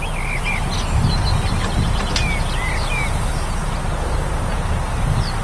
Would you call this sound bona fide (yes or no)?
yes